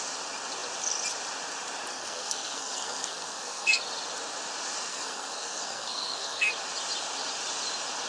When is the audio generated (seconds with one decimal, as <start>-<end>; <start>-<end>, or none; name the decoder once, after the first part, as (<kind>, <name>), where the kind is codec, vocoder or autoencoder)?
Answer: 1.9-3.8 (codec, SNAC); 4.9-6.5